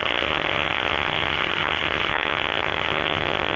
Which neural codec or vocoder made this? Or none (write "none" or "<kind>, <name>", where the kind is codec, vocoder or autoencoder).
vocoder, HiFi-GAN